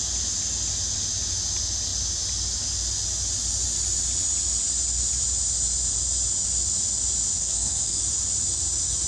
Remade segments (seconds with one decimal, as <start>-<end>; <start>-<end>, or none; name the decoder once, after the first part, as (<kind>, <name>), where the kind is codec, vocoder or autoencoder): 7.4-8.0 (codec, SNAC)